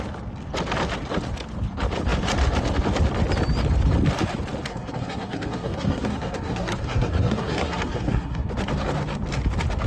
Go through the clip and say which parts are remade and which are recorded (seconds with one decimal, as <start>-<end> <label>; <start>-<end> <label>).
0.0-4.7 recorded; 4.7-8.5 remade; 8.5-9.9 recorded